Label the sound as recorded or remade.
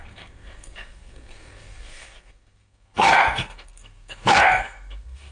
remade